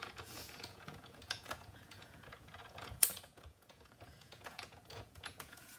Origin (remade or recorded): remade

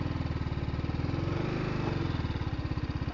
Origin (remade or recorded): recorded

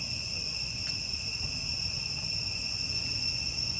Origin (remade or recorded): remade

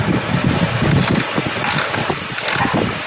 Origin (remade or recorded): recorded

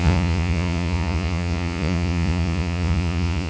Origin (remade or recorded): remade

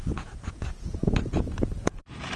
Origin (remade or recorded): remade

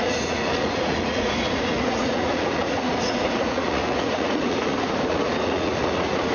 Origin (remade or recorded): remade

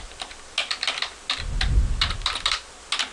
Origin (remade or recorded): recorded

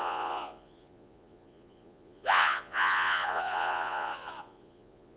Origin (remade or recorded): remade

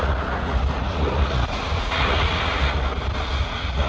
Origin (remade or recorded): remade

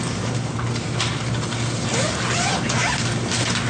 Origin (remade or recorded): recorded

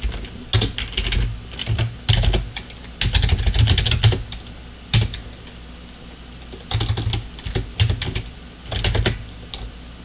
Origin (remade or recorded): recorded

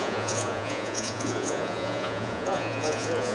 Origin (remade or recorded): remade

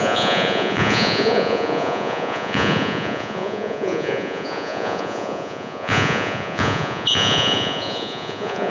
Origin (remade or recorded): remade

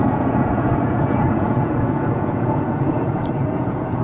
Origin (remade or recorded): remade